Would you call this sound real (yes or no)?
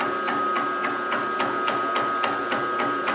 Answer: yes